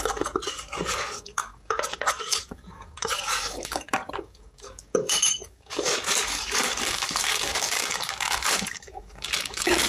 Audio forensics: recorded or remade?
remade